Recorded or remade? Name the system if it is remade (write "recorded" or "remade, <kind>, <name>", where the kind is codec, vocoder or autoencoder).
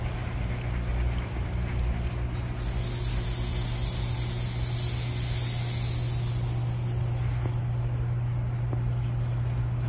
recorded